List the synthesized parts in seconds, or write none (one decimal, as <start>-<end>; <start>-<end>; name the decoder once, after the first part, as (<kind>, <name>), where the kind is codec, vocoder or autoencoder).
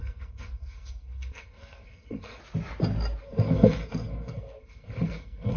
0.0-2.4 (codec, SNAC); 3.2-5.6